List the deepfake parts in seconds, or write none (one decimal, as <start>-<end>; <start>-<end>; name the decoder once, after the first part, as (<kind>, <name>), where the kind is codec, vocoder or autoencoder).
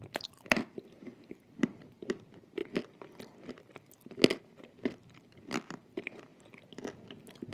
0.0-2.6 (vocoder, BigVGAN v2); 4.4-6.3